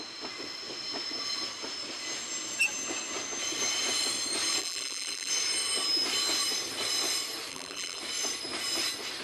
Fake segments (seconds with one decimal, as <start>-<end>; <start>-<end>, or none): 4.6-5.3; 7.5-8.0